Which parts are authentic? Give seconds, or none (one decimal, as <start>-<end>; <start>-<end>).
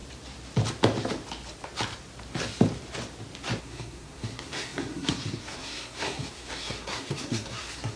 0.0-3.6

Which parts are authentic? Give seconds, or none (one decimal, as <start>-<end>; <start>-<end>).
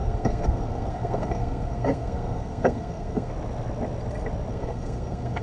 3.3-4.5